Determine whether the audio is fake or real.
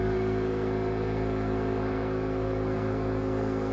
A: fake